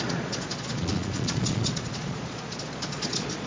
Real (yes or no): no